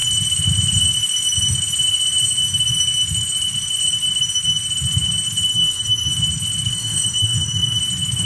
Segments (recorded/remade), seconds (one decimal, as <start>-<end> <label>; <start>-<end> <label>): 0.0-5.5 recorded; 5.5-6.1 remade; 6.1-6.7 recorded; 6.7-7.8 remade; 7.8-8.3 recorded